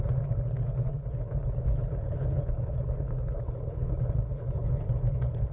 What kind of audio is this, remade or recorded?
remade